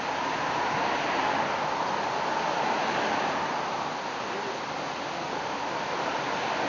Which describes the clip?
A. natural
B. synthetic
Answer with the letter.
A